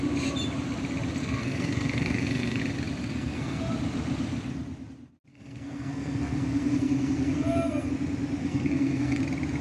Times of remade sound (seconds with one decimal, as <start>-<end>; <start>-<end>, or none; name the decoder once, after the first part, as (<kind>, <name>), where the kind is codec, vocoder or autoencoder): 1.2-2.6 (codec, SNAC); 3.0-3.6; 5.3-7.9; 8.4-9.2